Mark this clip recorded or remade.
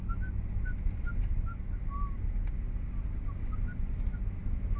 recorded